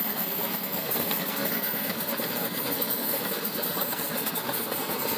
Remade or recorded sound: remade